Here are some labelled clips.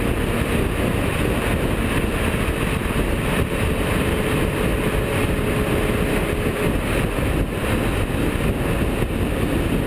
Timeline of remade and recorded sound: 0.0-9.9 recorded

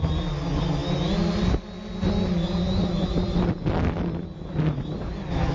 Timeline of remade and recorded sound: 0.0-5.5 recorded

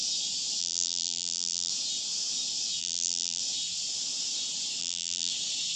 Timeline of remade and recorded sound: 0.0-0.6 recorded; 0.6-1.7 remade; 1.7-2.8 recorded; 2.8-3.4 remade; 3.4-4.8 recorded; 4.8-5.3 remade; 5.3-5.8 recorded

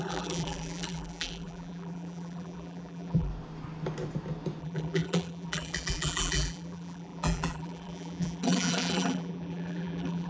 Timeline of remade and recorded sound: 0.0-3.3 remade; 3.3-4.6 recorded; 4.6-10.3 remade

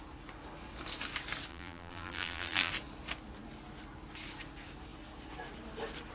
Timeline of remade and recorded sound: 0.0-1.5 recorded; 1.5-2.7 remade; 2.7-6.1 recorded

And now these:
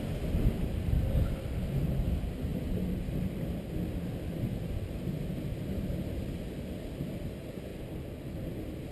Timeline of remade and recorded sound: 0.0-2.5 recorded; 2.5-3.8 remade; 3.8-7.7 recorded; 7.7-8.5 remade; 8.5-8.9 recorded

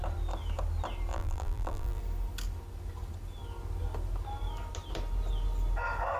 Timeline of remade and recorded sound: 0.0-1.1 recorded; 1.1-2.0 remade; 2.0-6.2 recorded